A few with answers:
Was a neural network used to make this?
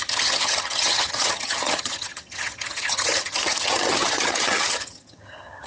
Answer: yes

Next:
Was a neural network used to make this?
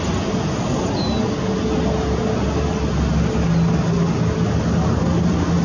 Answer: no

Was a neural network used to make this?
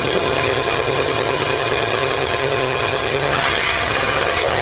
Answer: yes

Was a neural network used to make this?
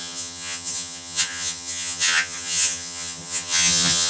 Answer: yes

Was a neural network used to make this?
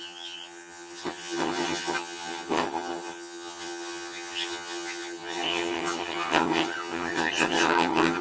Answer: yes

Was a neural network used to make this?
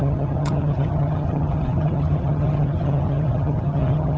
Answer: yes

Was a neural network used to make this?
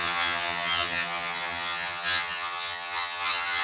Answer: yes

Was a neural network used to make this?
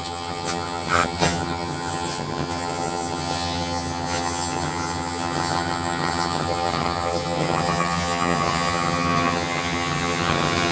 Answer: yes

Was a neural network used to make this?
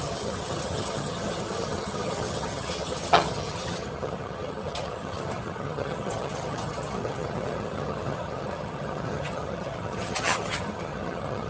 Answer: yes